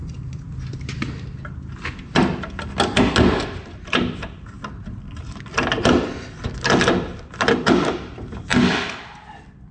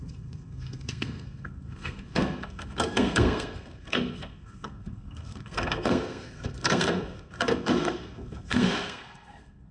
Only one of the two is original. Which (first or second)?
first